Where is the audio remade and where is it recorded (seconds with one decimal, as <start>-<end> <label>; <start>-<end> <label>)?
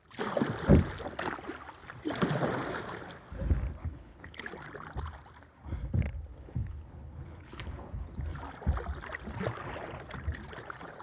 0.0-3.8 recorded; 3.8-4.5 remade; 4.5-6.3 recorded; 6.3-8.2 remade; 8.2-11.0 recorded